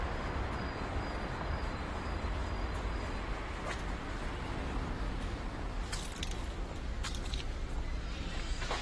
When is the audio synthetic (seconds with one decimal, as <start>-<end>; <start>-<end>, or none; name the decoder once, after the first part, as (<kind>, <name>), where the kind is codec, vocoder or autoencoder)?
0.0-8.8 (vocoder, BigVGAN v2)